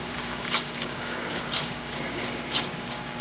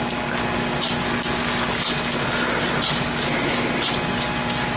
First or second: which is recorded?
second